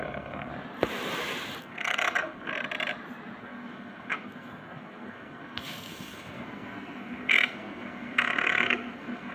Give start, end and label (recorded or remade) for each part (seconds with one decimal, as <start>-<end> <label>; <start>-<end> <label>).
0.0-0.5 remade; 0.5-1.6 recorded; 1.6-2.5 remade; 2.5-3.4 recorded; 3.4-9.3 remade